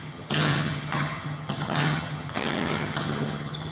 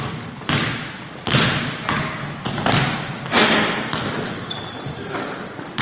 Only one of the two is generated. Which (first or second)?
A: first